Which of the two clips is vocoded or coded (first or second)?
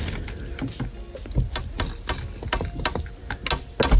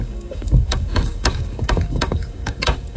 second